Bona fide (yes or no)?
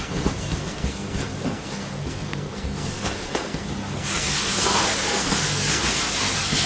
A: no